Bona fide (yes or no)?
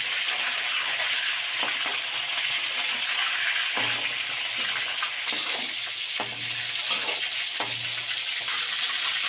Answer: yes